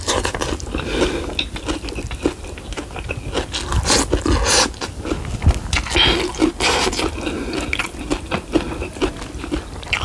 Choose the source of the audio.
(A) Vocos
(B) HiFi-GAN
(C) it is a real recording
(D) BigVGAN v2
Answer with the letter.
C